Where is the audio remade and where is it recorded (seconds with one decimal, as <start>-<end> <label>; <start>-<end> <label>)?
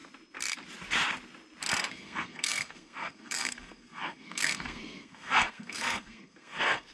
0.0-1.9 recorded; 1.9-6.9 remade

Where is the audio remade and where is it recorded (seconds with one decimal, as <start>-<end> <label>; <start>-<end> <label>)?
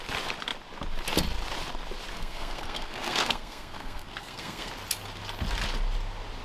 0.0-2.1 recorded; 2.1-4.7 remade; 4.7-6.4 recorded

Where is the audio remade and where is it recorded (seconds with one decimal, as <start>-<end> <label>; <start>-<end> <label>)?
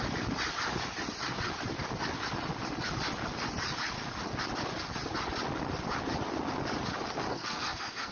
0.0-7.3 recorded; 7.3-8.1 remade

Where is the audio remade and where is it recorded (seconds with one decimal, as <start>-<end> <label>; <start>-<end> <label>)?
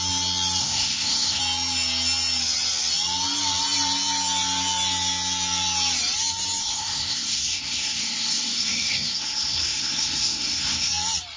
0.0-0.6 recorded; 0.6-1.4 remade; 1.4-6.6 recorded; 6.6-10.9 remade; 10.9-11.4 recorded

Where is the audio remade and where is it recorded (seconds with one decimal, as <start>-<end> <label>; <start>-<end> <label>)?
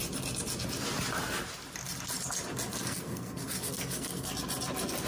0.0-2.7 recorded; 2.7-4.3 remade; 4.3-5.1 recorded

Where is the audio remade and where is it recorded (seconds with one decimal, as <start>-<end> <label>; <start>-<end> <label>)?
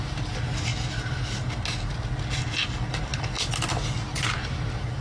0.0-5.0 recorded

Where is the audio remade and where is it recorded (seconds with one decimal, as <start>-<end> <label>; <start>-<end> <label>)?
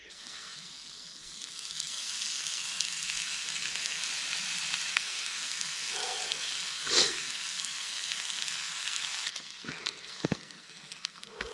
0.0-4.1 remade; 4.1-4.9 recorded; 4.9-11.5 remade